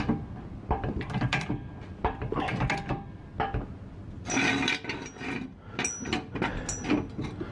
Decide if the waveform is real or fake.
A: real